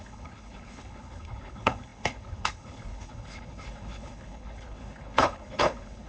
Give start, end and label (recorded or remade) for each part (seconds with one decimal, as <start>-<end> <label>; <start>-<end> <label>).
0.0-6.1 remade